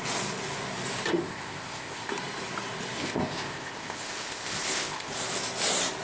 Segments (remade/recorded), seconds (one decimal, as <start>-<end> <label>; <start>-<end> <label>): 0.0-1.1 recorded; 1.1-2.1 remade; 2.1-3.0 recorded; 3.0-5.1 remade; 5.1-6.0 recorded